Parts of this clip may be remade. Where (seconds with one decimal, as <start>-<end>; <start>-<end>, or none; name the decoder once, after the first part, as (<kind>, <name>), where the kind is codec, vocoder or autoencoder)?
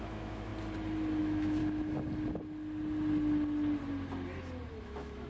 0.0-0.5 (autoencoder, DAC-VAE); 1.2-1.6; 4.8-5.3